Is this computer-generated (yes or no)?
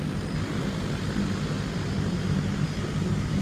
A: no